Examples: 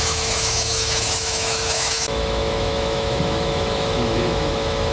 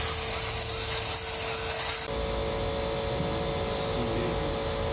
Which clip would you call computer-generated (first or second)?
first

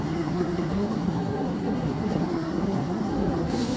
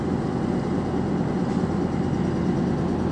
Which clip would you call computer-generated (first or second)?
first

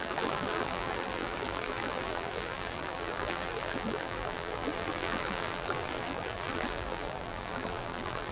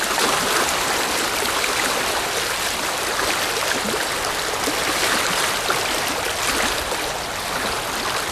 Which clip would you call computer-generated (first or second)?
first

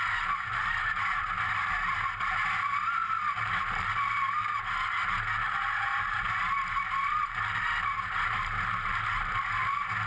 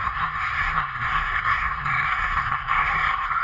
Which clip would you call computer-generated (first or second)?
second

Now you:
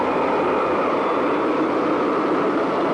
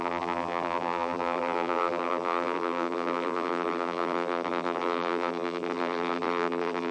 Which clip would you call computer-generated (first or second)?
second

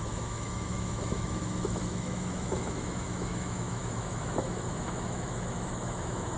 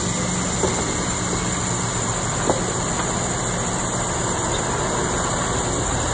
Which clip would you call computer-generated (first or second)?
first